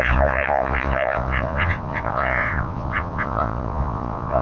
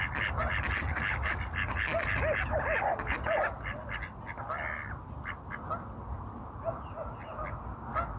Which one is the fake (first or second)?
first